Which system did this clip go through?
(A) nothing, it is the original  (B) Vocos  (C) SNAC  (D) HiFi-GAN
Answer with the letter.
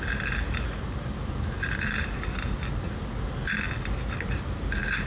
A